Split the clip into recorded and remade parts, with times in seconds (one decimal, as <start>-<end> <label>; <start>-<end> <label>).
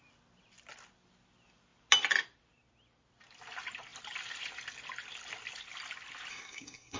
0.0-6.3 recorded; 6.3-7.0 remade